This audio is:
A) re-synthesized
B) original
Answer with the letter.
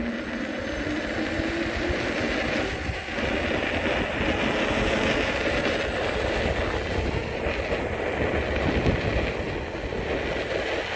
B